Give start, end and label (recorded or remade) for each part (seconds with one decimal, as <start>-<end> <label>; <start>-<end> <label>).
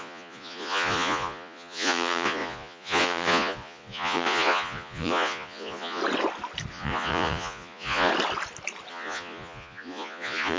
0.0-6.0 remade; 6.0-6.7 recorded; 6.7-8.1 remade; 8.1-8.9 recorded; 8.9-10.6 remade